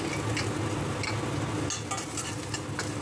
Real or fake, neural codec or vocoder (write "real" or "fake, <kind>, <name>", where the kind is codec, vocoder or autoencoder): real